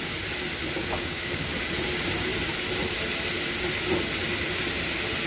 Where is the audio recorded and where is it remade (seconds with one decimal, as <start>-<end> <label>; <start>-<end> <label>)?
0.0-0.8 recorded; 0.8-1.5 remade; 1.5-5.3 recorded